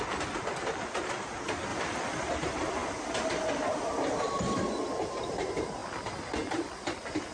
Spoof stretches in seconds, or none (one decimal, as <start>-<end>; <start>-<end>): none